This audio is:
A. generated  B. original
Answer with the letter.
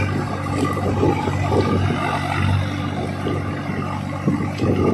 B